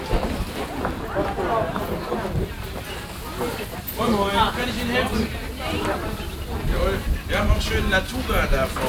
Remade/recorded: recorded